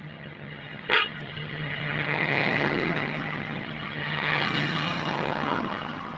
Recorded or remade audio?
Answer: remade